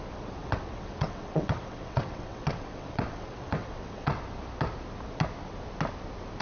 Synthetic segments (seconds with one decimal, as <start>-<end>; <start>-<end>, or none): 0.4-4.2